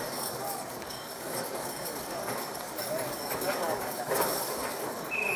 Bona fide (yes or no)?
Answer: no